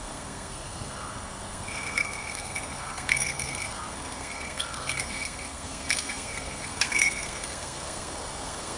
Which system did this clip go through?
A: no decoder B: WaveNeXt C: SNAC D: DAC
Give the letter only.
C